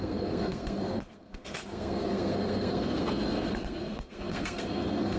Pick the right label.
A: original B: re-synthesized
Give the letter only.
B